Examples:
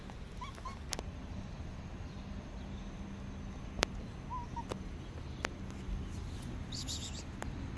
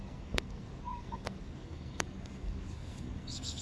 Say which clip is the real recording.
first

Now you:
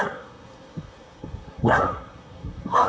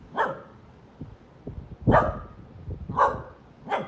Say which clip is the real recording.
second